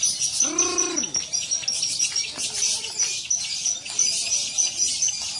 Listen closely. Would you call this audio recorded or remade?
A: recorded